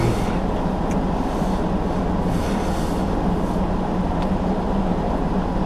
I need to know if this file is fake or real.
real